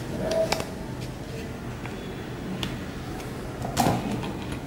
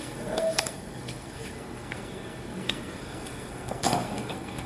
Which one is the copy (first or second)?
second